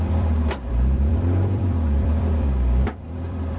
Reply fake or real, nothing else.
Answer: fake